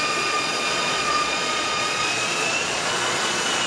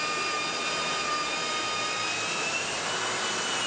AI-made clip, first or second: first